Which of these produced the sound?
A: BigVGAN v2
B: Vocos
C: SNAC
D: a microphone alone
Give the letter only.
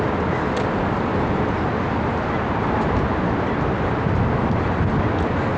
D